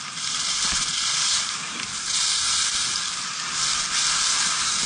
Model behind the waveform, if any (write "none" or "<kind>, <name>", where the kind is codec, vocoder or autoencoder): none